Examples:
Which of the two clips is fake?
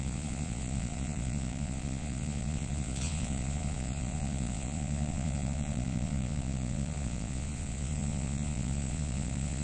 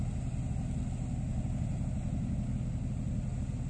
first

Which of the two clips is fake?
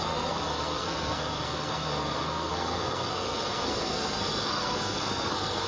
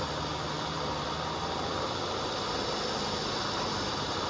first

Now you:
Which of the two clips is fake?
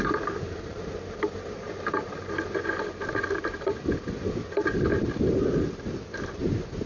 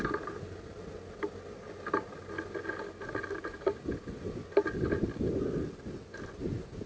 first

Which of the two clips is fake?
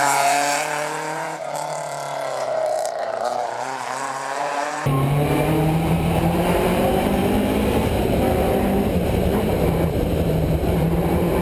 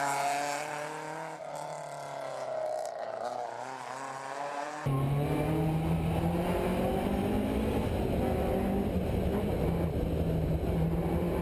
first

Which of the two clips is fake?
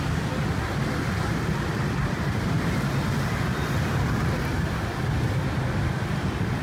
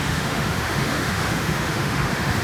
second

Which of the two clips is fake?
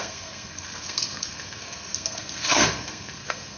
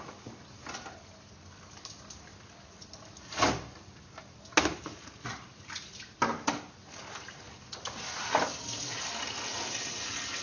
first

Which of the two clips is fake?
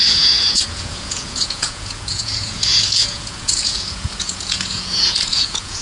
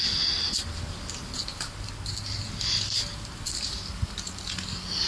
first